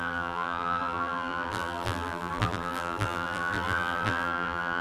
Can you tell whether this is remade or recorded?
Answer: remade